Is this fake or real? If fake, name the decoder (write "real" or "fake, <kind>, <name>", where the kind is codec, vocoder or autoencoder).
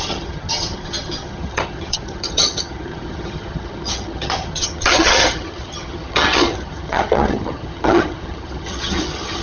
fake, vocoder, HiFi-GAN